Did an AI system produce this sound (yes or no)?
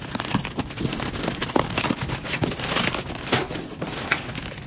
no